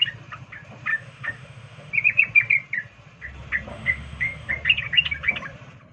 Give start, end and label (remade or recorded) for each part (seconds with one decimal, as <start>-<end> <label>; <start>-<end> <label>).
0.0-0.9 recorded; 0.9-1.9 remade; 1.9-3.7 recorded; 3.7-4.5 remade; 4.5-5.9 recorded